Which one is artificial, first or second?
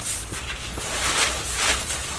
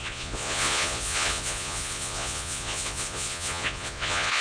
second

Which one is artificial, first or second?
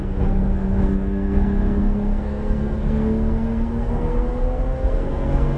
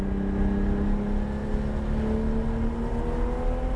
first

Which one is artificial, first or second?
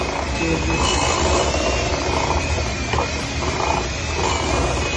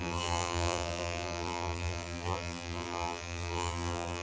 second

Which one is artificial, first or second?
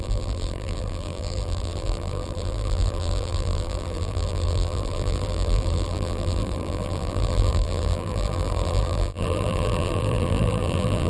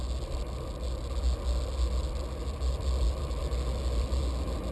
first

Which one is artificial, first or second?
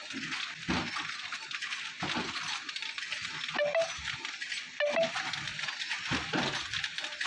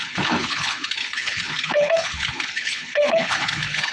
second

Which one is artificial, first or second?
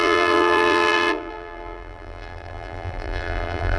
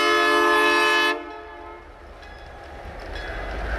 first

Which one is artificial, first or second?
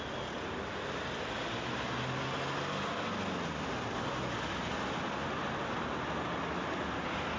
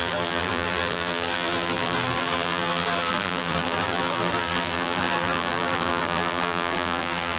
second